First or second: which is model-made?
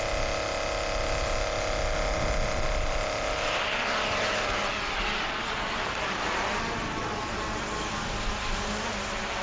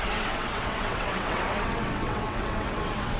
second